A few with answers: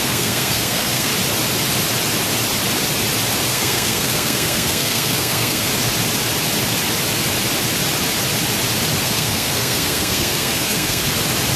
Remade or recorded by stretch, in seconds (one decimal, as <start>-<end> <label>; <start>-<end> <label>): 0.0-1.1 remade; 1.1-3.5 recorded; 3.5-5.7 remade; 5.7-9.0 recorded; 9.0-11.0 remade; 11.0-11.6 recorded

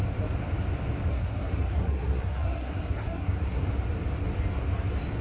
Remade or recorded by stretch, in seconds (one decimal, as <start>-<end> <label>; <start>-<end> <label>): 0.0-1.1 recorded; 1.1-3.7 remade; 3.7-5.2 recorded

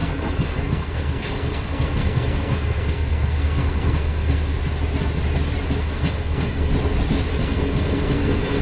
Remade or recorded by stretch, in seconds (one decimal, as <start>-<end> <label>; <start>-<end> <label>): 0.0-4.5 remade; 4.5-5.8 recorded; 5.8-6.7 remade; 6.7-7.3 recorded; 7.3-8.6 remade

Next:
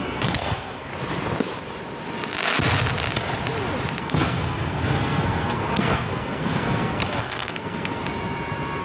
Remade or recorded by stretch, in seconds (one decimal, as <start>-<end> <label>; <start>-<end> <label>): 0.0-0.9 remade; 0.9-4.0 recorded; 4.0-8.0 remade; 8.0-8.8 recorded

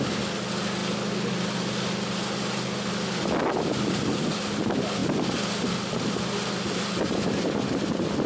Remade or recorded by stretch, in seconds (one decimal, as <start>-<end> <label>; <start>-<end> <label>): 0.0-8.3 recorded

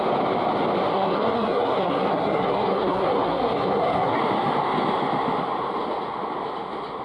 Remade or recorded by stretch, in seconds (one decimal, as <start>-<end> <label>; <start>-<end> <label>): 0.0-0.9 recorded; 0.9-4.2 remade; 4.2-7.0 recorded

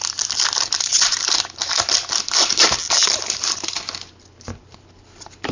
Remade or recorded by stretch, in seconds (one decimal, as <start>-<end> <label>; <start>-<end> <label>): 0.0-5.5 recorded